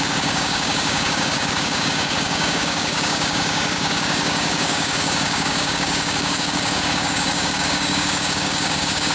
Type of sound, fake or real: fake